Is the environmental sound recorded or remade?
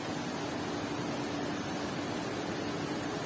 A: recorded